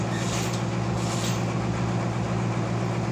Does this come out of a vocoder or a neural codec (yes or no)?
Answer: no